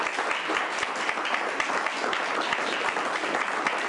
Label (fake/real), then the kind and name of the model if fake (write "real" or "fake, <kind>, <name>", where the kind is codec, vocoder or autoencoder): real